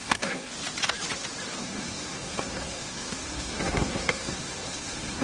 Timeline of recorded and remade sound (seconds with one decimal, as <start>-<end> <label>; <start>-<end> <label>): 0.0-0.5 remade; 0.5-1.6 recorded; 1.6-5.2 remade